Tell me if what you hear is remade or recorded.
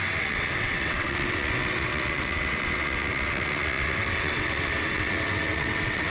remade